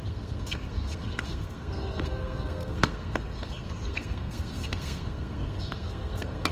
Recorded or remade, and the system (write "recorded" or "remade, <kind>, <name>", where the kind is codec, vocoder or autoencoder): remade, codec, SNAC